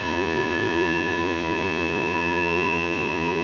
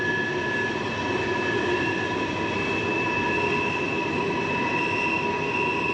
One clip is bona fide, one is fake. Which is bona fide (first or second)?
second